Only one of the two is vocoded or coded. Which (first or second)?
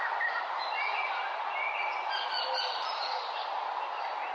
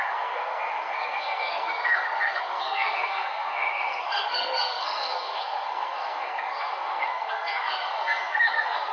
second